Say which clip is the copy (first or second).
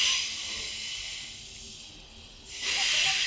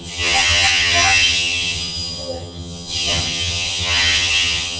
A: second